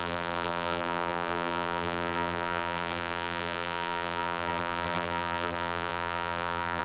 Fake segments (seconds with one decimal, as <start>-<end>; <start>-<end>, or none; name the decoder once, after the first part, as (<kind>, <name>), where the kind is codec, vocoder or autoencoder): 0.0-6.8 (vocoder, BigVGAN v2)